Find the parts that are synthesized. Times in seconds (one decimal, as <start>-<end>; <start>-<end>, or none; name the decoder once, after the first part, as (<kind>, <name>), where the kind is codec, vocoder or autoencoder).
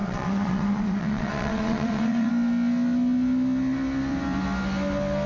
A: 0.0-2.3 (vocoder, WaveNeXt)